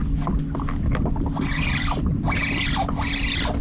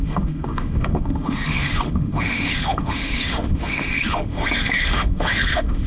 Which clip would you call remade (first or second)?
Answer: second